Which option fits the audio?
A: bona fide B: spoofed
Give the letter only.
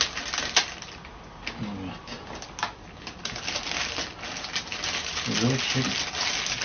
A